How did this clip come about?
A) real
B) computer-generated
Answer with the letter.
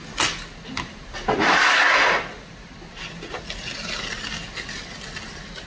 A